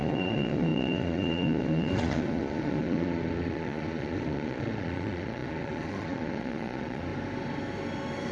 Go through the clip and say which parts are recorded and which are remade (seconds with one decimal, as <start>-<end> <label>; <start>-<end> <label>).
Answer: 0.0-7.1 remade; 7.1-8.3 recorded